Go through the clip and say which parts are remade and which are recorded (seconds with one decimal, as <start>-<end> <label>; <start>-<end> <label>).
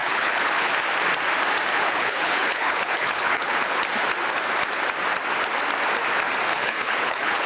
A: 0.0-0.7 remade; 0.7-1.7 recorded; 1.7-3.8 remade; 3.8-6.5 recorded; 6.5-7.5 remade